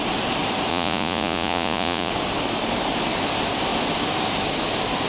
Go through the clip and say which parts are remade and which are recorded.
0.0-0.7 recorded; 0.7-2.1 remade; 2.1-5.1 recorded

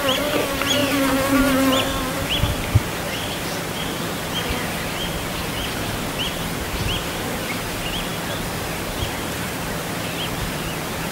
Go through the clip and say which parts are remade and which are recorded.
0.0-11.1 recorded

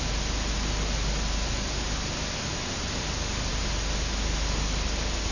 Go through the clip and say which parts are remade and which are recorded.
0.0-5.3 recorded

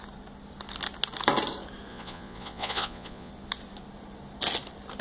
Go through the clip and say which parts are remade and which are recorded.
0.0-1.9 recorded; 1.9-3.3 remade; 3.3-5.0 recorded

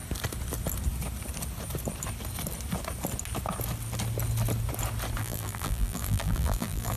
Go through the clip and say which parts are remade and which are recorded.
0.0-5.2 recorded; 5.2-7.0 remade